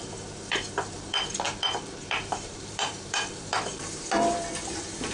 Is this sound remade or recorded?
remade